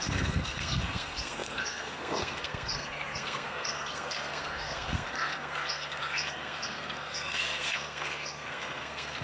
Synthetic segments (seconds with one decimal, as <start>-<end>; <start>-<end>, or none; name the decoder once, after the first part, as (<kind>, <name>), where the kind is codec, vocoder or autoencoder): 0.0-9.2 (codec, SNAC)